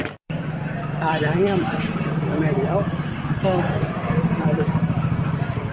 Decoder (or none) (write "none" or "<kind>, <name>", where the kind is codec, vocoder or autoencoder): vocoder, BigVGAN v2